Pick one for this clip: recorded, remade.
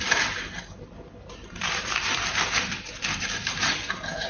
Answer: remade